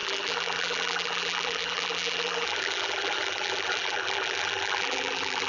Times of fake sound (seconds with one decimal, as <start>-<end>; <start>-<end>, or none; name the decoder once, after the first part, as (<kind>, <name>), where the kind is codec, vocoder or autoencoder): 0.0-5.5 (vocoder, BigVGAN v2)